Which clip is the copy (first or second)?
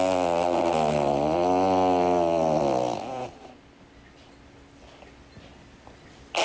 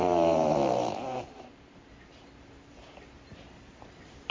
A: second